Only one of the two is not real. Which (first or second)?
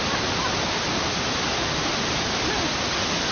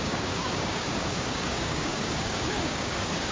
second